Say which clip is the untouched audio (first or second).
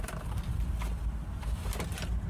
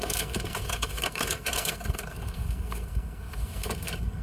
first